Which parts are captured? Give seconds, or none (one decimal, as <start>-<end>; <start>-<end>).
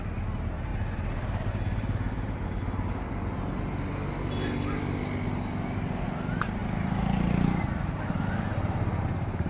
0.0-0.7; 1.5-9.5